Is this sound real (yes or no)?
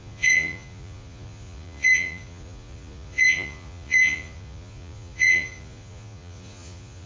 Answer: no